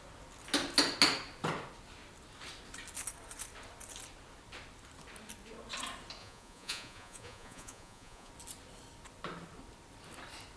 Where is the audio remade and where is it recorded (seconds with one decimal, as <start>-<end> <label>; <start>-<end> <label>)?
0.0-6.2 recorded; 6.2-8.3 remade; 8.3-10.6 recorded